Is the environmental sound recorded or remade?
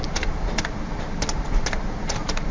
recorded